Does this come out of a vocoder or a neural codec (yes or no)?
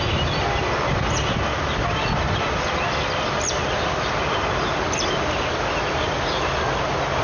no